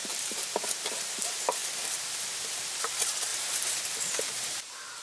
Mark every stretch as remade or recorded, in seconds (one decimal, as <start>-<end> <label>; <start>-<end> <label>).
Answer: 0.0-1.6 remade; 1.6-2.8 recorded; 2.8-5.0 remade